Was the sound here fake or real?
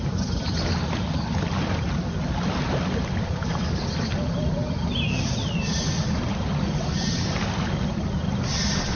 real